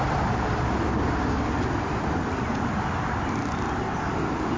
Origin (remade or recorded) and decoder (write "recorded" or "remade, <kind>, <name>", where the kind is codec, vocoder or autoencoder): recorded